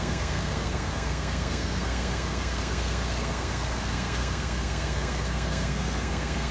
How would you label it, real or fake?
fake